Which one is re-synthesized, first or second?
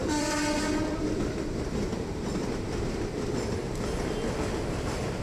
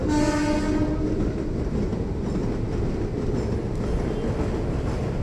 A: first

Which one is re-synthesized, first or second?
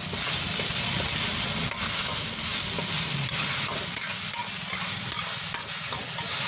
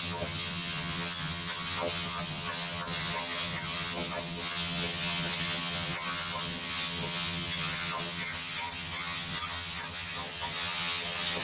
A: second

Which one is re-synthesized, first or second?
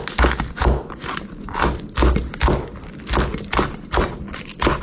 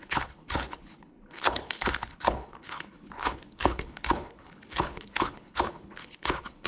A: second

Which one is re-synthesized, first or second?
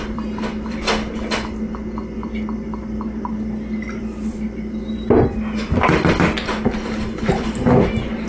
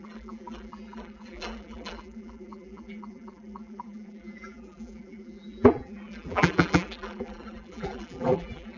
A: second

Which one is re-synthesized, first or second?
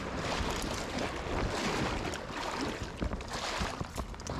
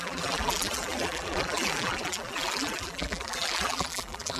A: second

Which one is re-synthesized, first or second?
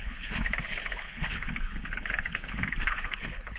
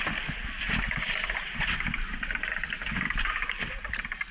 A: first